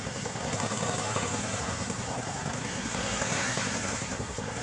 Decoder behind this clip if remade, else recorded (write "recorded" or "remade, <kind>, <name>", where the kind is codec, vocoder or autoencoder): remade, codec, SNAC